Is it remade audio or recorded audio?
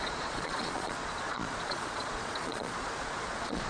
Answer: remade